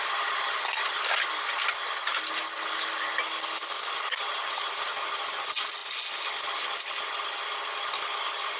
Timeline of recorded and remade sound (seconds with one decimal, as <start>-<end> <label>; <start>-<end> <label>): 0.0-8.6 recorded